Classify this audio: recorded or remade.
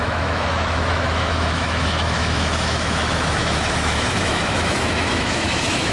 remade